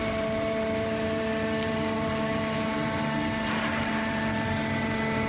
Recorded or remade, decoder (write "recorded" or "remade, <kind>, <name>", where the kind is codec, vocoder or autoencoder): remade, vocoder, BigVGAN v2